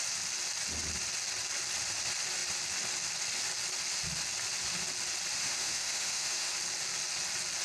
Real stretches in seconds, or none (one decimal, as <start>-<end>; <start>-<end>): 0.0-5.4; 6.5-7.6